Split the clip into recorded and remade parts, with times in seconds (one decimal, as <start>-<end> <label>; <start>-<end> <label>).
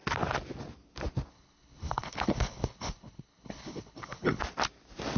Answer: 0.0-1.3 recorded; 1.3-4.4 remade; 4.4-5.2 recorded